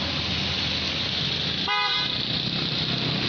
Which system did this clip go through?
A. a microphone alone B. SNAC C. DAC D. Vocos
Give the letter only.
A